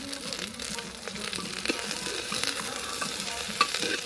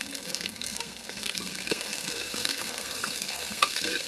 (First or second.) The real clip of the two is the first